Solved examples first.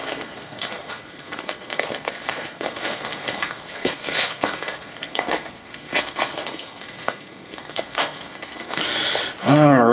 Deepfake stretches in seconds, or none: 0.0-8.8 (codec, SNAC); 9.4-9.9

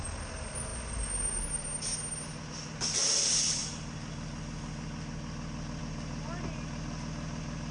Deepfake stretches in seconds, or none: none

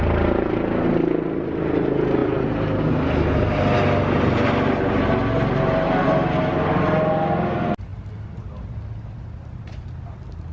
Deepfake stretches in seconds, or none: 2.2-2.9 (vocoder, BigVGAN v2); 7.9-10.1

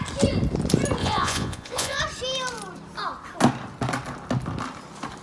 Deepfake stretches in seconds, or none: 1.0-2.0 (vocoder, Vocos)

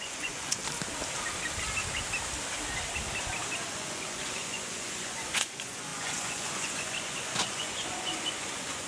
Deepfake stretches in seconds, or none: 0.0-0.6 (vocoder, Vocos); 3.7-8.9

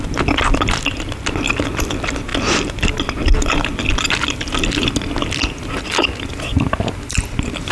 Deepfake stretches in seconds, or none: none